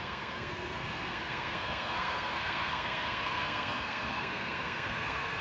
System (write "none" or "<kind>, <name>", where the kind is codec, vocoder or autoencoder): codec, SNAC